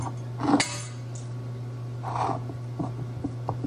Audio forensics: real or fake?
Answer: real